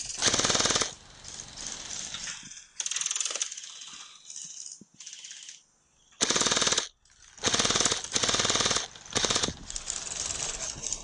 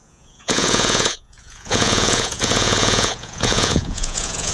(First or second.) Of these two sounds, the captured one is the first